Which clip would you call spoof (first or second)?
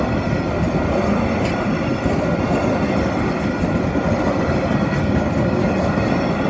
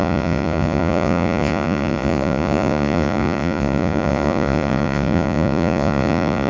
second